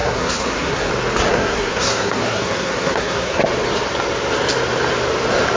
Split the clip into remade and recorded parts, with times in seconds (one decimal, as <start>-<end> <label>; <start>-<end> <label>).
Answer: 0.0-0.9 remade; 0.9-1.3 recorded; 1.3-3.4 remade; 3.4-5.6 recorded